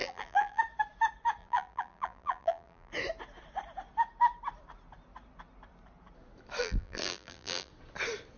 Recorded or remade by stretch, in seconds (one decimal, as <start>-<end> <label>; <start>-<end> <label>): 0.0-0.6 remade; 0.6-1.4 recorded; 1.4-2.9 remade; 2.9-6.6 recorded; 6.6-7.7 remade; 7.7-8.4 recorded